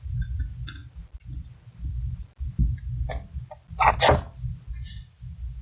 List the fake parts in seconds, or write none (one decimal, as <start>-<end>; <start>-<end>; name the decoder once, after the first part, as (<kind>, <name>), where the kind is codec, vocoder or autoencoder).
none